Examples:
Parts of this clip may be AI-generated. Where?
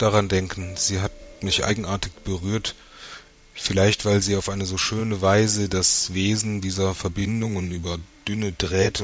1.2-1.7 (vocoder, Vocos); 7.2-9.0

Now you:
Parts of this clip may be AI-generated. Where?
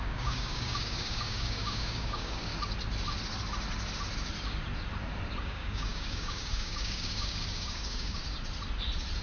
0.0-2.5 (codec, DAC); 5.4-8.2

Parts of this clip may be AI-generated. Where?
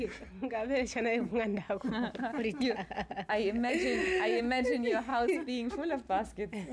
none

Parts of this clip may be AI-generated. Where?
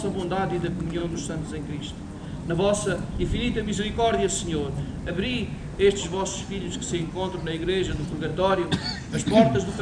none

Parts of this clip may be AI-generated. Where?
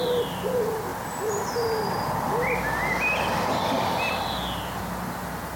0.9-1.5 (vocoder, BigVGAN v2)